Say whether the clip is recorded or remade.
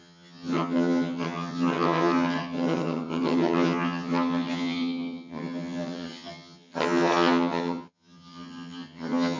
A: remade